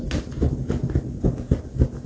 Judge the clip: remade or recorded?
recorded